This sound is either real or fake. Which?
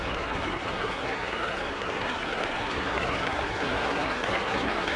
fake